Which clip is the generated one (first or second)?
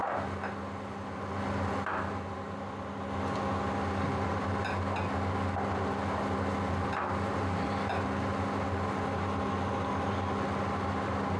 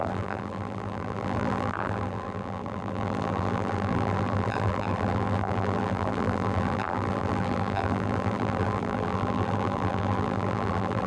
second